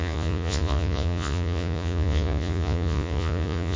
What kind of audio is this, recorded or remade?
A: remade